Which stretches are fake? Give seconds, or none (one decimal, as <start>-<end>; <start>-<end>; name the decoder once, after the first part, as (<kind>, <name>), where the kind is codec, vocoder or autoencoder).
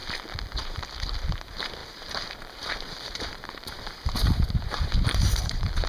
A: 0.6-5.9 (vocoder, BigVGAN v2)